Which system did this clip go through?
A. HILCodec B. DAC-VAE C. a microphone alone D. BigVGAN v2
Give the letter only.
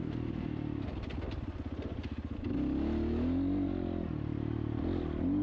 C